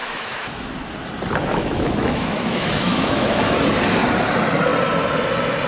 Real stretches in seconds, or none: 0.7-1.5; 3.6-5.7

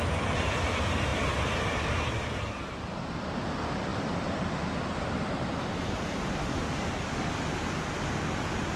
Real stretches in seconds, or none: 0.0-6.4; 7.3-8.8

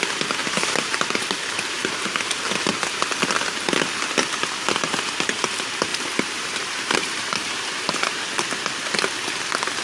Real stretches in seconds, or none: 0.0-0.4; 2.2-5.9; 8.2-9.8

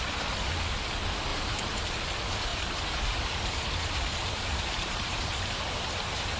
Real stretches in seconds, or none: 0.0-1.3; 1.8-2.5

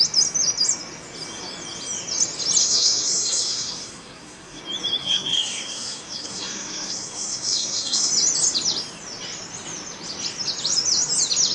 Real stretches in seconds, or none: 0.0-2.6; 4.6-5.0; 8.1-11.5

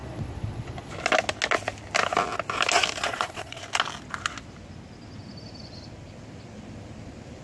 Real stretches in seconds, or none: 0.9-3.0; 3.6-7.4

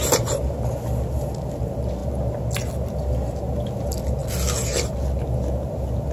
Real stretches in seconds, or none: 0.0-6.1